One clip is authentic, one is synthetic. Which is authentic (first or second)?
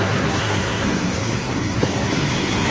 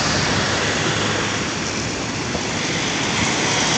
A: second